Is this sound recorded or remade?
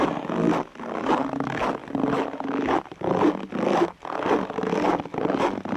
recorded